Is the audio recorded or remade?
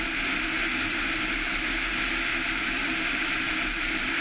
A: remade